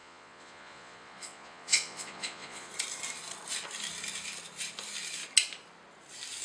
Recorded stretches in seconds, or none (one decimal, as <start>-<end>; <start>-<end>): 2.7-6.4